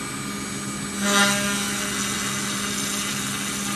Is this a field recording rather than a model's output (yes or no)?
yes